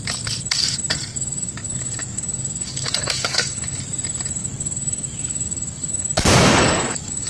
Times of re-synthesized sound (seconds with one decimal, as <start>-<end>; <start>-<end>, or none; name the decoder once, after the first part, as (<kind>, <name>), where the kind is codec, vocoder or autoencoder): 0.6-3.8 (codec, DAC); 4.4-7.3

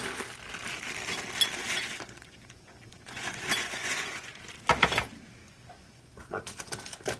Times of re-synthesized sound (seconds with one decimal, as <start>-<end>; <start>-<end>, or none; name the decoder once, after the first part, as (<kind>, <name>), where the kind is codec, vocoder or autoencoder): 1.6-4.3 (vocoder, Vocos); 5.4-6.7

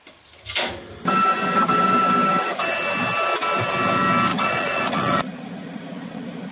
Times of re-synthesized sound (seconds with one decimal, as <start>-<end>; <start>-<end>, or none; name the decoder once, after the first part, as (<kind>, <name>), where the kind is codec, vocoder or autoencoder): 4.3-6.5 (vocoder, Vocos)

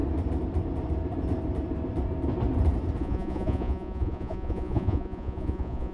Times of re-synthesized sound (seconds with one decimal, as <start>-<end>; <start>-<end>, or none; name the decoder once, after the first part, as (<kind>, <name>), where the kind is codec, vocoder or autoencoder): 3.0-5.9 (vocoder, Vocos)

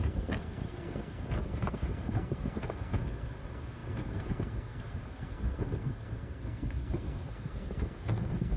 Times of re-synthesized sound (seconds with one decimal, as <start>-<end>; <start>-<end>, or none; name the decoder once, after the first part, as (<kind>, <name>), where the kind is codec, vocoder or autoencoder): 0.0-8.6 (codec, SNAC)

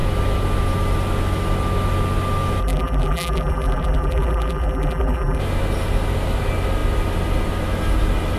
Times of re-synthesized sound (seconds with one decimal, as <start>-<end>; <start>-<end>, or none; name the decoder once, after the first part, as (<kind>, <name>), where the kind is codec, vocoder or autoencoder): 2.6-5.4 (vocoder, BigVGAN v2)

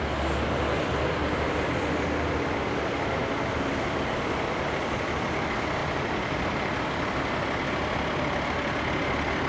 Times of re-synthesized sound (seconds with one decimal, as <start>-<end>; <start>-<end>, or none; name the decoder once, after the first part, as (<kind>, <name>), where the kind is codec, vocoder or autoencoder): none